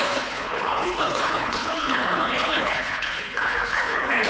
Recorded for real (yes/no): no